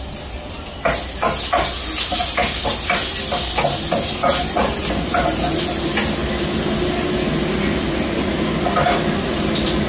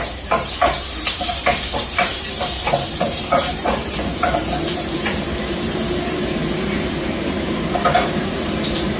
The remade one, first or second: second